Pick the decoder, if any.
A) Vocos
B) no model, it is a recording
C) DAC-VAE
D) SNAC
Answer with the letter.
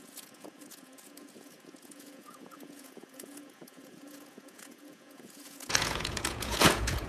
A